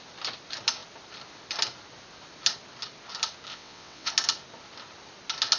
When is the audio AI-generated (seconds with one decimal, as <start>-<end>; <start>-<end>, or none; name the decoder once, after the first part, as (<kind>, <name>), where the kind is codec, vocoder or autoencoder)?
3.5-4.1 (vocoder, WaveNeXt)